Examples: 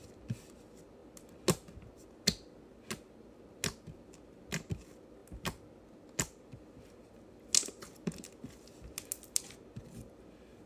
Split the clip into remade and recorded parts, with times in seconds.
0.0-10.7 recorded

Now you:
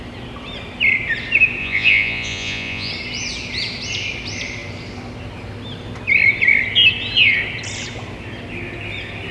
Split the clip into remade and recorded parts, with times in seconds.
0.0-1.6 recorded; 1.6-2.9 remade; 2.9-9.3 recorded

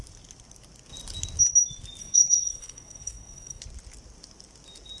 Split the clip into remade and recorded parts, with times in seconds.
0.0-2.0 recorded; 2.0-3.6 remade; 3.6-5.0 recorded

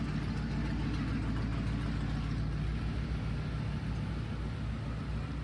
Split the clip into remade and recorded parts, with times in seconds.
0.0-5.4 recorded

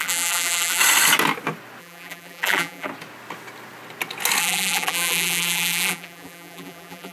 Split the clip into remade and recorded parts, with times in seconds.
0.0-0.8 remade; 0.8-1.8 recorded; 1.8-2.9 remade; 2.9-4.4 recorded; 4.4-7.1 remade

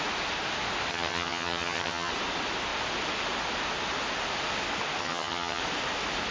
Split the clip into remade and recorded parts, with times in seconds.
0.0-0.9 recorded; 0.9-2.1 remade; 2.1-5.0 recorded; 5.0-5.6 remade; 5.6-6.3 recorded

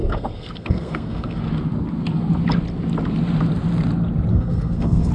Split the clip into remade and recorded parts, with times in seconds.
0.0-1.4 remade; 1.4-4.3 recorded; 4.3-5.1 remade

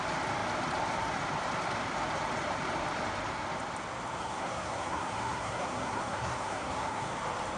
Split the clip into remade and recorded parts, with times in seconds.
0.0-4.2 recorded; 4.2-7.1 remade; 7.1-7.6 recorded